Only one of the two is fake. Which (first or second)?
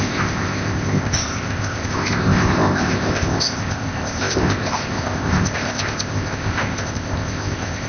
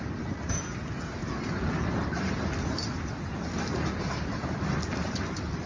first